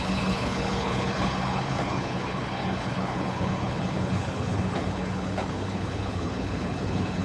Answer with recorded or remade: remade